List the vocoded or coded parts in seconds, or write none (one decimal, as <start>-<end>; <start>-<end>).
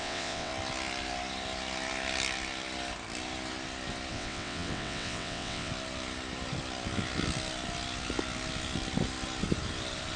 0.0-0.5; 4.1-5.7